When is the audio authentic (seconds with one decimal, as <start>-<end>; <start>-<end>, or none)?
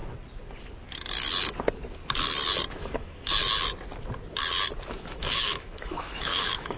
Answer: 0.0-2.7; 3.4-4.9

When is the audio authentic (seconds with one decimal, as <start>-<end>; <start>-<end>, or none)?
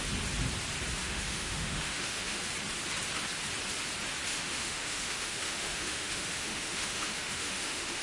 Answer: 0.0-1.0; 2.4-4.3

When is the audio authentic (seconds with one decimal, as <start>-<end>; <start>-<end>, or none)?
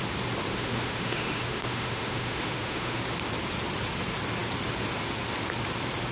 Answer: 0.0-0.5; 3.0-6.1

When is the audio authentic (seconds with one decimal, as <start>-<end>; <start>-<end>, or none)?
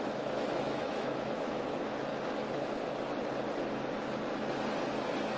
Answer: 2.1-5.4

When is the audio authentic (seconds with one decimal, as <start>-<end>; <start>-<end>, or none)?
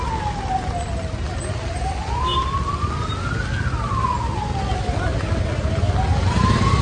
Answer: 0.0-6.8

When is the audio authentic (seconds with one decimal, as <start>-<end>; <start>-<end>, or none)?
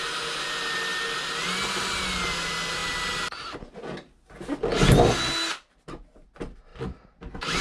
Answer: 0.0-7.6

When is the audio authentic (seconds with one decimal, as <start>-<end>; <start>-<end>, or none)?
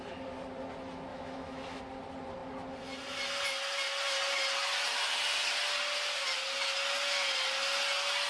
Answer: 0.0-1.1; 1.8-8.3